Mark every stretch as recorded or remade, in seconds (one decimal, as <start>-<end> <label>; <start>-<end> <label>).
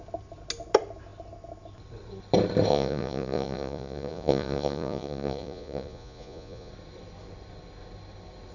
0.0-2.7 recorded; 2.7-6.7 remade; 6.7-8.5 recorded